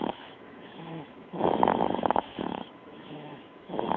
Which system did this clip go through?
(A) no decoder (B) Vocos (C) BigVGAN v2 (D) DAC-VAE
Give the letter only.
D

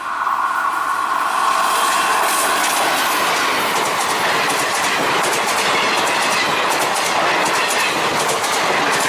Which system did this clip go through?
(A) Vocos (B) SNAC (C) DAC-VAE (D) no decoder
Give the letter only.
D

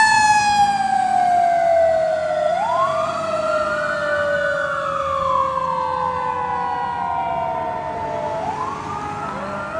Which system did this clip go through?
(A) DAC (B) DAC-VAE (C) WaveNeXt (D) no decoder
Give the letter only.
D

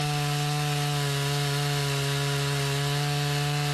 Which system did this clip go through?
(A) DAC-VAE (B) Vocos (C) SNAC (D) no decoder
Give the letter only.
D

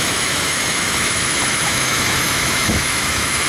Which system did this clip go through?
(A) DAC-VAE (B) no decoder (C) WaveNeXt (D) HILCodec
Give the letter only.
A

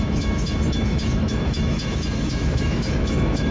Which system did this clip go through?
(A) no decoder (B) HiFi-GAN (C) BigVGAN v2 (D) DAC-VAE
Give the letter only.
D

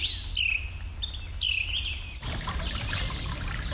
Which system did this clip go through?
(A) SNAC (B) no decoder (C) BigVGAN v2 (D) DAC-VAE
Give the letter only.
B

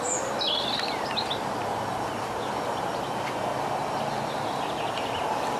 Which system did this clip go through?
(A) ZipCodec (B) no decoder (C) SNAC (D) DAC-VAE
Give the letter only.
B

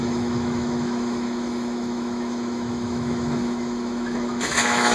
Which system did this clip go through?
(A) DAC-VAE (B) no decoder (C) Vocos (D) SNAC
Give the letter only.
A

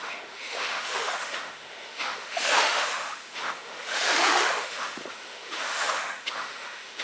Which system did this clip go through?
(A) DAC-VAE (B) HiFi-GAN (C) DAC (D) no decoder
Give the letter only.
A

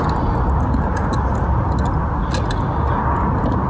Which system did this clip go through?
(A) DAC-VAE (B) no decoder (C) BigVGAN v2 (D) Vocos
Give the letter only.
B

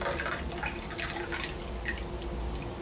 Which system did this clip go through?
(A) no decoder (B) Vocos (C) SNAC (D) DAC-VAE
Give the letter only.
A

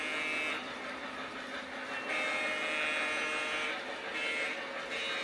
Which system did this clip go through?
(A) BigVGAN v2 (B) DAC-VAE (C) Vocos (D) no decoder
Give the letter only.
D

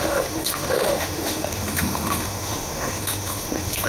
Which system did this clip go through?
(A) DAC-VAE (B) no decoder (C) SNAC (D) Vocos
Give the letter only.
A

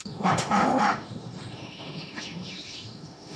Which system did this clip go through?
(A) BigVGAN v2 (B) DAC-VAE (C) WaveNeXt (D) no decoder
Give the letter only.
B